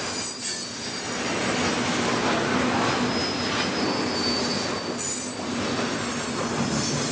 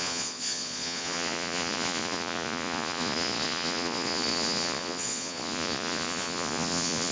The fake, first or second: second